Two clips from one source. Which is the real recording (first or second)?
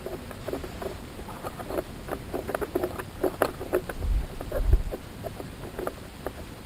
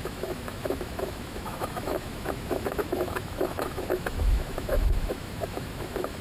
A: first